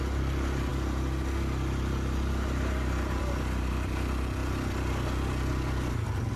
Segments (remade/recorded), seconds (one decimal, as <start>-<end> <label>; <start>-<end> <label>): 0.0-6.4 recorded